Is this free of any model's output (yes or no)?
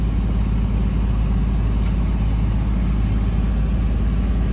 yes